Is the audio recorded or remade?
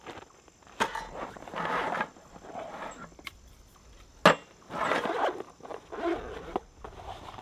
recorded